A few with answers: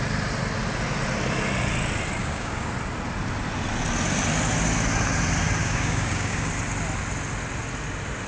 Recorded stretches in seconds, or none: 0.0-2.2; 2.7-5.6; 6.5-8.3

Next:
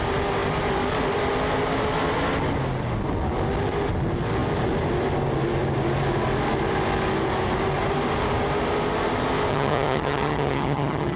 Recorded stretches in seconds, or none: 0.0-9.5